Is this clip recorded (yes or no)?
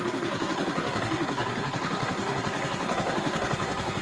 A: no